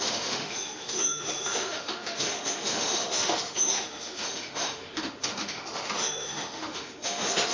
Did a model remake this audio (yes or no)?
yes